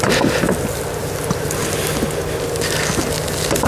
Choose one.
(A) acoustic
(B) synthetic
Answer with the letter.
A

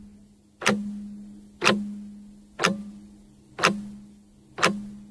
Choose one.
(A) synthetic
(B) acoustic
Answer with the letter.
B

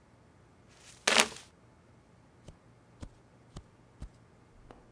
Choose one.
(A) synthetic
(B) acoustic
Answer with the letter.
B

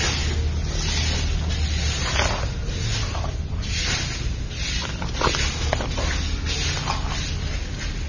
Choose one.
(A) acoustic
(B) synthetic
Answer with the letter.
A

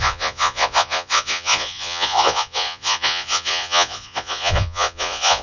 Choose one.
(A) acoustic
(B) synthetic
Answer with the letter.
B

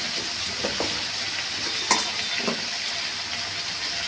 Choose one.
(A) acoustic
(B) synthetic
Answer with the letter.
A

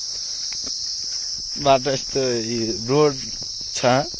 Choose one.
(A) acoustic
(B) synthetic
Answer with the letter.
A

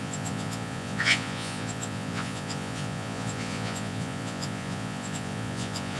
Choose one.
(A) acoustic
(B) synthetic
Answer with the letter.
B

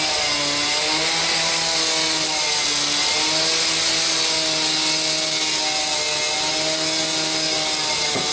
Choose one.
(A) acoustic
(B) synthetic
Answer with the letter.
A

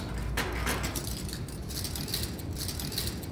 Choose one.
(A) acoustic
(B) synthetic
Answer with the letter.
A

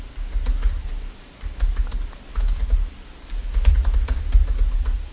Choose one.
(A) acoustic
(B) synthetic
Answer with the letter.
A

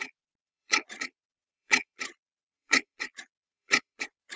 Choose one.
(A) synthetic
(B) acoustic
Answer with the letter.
A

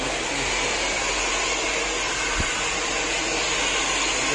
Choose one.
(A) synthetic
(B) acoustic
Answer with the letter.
B